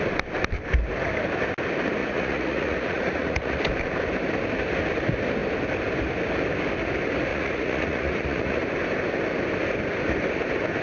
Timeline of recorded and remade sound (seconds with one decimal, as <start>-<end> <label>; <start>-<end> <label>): 0.0-2.0 recorded; 2.0-3.6 remade; 3.6-7.3 recorded; 7.3-8.6 remade; 8.6-10.8 recorded